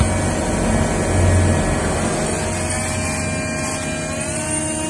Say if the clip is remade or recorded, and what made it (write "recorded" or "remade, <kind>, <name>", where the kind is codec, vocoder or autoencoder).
recorded